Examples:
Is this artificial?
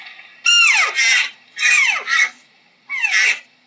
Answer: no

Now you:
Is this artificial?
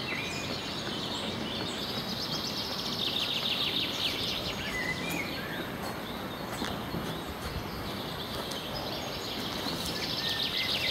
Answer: no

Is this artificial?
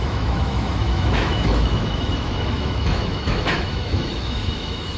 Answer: yes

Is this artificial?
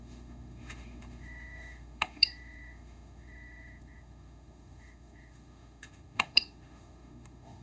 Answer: yes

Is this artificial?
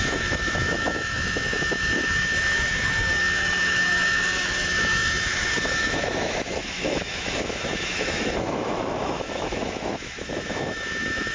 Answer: yes